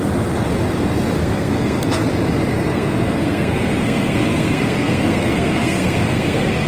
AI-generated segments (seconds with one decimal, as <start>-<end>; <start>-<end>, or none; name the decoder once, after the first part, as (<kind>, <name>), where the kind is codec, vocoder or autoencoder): 1.2-2.1 (codec, SNAC); 2.5-6.7